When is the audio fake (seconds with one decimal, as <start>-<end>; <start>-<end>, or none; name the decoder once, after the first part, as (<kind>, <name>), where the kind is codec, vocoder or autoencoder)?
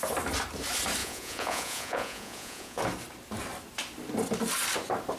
1.0-2.8 (vocoder, Vocos)